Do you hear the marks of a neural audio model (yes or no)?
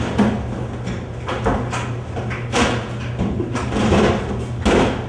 no